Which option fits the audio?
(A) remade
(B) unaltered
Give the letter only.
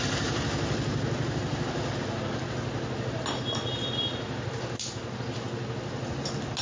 B